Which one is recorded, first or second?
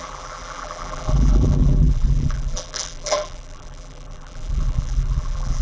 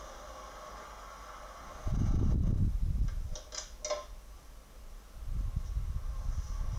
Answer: second